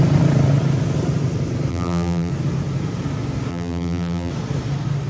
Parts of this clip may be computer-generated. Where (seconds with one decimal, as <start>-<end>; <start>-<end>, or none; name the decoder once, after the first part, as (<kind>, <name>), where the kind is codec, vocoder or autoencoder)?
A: 1.7-2.3 (vocoder, BigVGAN v2); 3.5-4.3